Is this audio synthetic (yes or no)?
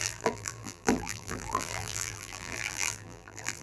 yes